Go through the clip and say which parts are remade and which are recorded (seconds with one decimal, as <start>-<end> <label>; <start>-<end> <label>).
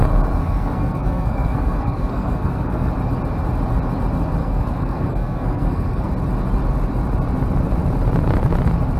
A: 0.0-0.4 recorded; 0.4-2.9 remade; 2.9-4.4 recorded; 4.4-6.1 remade; 6.1-9.0 recorded